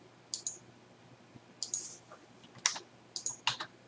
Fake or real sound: real